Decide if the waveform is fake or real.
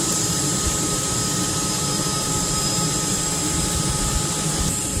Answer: fake